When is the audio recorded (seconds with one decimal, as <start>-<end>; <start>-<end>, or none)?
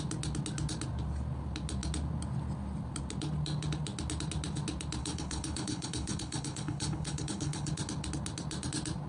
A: 0.0-5.0; 7.7-9.1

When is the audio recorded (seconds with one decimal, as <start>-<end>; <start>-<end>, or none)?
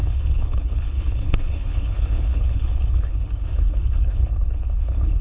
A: none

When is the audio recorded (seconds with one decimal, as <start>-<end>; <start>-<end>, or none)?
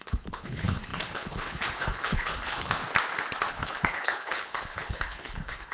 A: 2.8-3.5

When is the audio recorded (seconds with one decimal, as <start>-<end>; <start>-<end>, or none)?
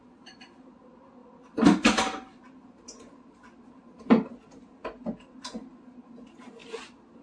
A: 0.0-7.2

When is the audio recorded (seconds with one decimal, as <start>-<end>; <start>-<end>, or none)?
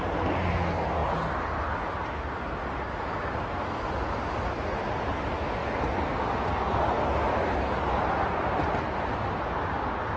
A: 0.0-10.2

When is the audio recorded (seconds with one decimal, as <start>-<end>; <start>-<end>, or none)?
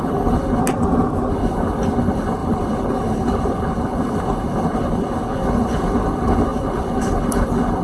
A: 0.6-1.3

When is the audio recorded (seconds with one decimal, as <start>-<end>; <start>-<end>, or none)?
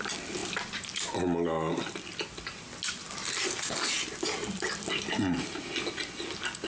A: 0.0-6.7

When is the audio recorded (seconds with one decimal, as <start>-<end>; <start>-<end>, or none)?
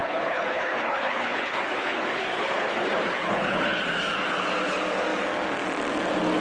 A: 3.8-6.4